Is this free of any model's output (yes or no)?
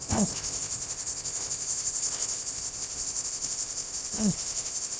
no